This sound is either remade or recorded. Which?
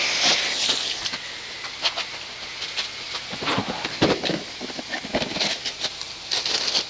recorded